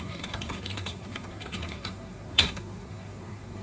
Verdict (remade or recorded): remade